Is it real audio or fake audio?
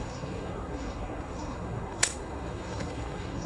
fake